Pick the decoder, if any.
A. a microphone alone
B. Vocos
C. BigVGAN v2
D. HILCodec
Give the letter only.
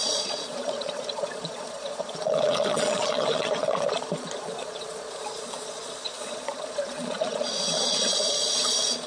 B